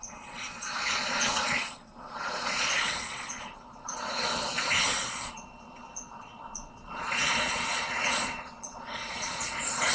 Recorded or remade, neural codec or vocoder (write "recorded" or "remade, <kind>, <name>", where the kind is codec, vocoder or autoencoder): remade, vocoder, Vocos